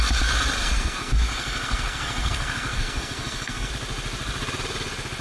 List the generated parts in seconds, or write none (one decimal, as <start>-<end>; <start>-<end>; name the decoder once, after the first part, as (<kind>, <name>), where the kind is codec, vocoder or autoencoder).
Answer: 0.6-3.7 (codec, SNAC)